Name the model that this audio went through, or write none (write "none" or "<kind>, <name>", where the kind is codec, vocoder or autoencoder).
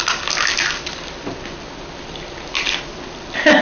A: none